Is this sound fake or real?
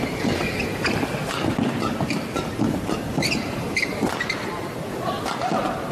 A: real